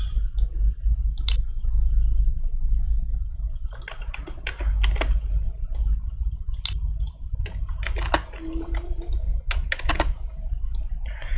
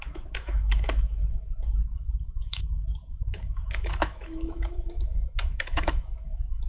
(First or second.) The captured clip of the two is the first